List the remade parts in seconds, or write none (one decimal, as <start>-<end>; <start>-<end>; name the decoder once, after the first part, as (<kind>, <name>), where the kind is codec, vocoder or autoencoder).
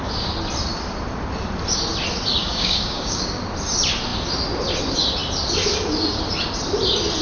2.4-3.4 (codec, DAC)